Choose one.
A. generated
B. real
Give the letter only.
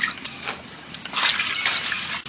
B